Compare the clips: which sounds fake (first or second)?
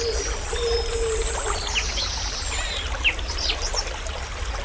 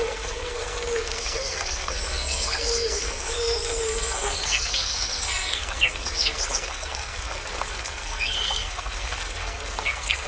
second